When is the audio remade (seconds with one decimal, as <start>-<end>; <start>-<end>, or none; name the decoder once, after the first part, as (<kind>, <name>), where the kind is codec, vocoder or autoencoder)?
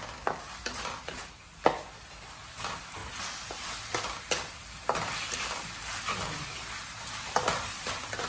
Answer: none